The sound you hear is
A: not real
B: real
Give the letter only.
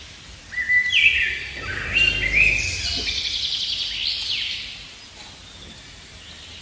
B